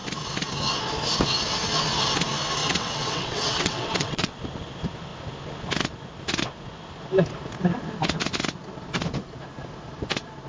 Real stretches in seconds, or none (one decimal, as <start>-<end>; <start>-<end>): 0.0-2.6; 4.4-10.5